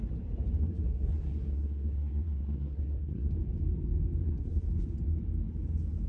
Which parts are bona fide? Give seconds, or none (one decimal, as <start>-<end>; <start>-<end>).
0.0-0.6; 3.3-4.2; 4.7-6.1